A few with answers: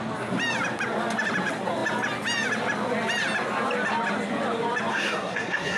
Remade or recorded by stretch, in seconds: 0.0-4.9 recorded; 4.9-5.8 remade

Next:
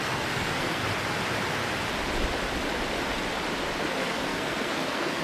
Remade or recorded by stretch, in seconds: 0.0-0.8 remade; 0.8-3.9 recorded; 3.9-5.2 remade

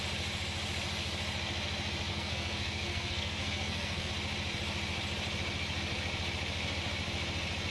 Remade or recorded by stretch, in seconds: 0.0-2.1 recorded; 2.1-4.1 remade; 4.1-7.7 recorded

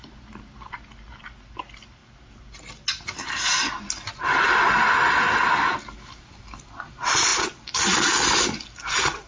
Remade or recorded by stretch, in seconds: 0.0-9.3 recorded

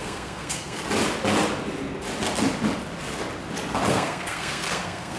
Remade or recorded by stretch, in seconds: 0.0-0.8 remade; 0.8-3.9 recorded; 3.9-5.2 remade

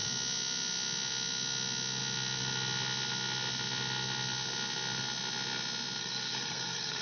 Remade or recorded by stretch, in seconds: 0.0-6.0 recorded; 6.0-7.0 remade

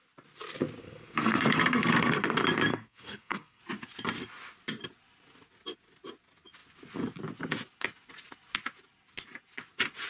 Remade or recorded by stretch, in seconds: 0.0-0.8 recorded; 0.8-2.2 remade; 2.2-2.7 recorded; 2.7-3.6 remade; 3.6-10.1 recorded

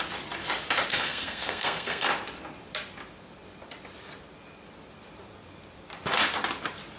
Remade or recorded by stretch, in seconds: 0.0-0.9 recorded; 0.9-2.1 remade; 2.1-7.0 recorded